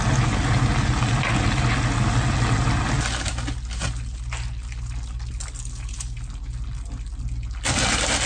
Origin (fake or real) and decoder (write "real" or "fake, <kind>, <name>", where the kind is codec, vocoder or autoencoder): real